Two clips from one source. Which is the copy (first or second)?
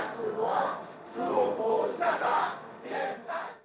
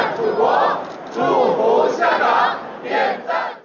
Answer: first